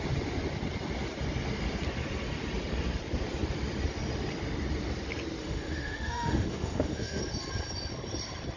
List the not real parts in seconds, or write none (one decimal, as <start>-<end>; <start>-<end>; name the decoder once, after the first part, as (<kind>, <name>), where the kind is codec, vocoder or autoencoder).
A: 5.4-7.2 (autoencoder, DAC-VAE)